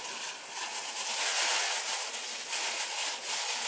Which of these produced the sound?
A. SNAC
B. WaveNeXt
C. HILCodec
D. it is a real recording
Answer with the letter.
D